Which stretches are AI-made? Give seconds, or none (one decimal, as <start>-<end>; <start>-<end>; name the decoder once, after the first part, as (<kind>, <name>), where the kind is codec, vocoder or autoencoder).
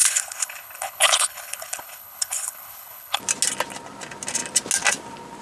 0.0-3.2 (codec, HILCodec)